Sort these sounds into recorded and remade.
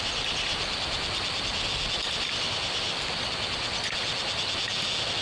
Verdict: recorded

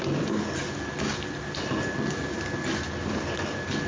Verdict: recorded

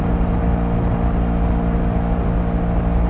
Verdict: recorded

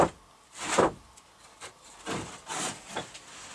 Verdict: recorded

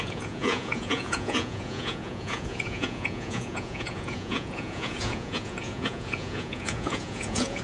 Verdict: remade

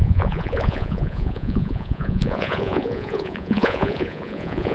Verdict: remade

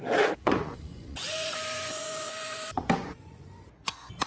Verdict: remade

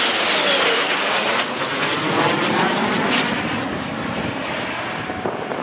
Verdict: recorded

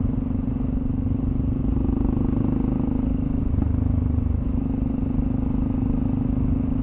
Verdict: recorded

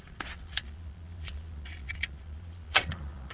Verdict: remade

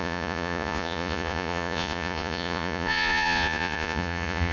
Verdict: remade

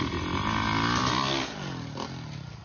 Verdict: recorded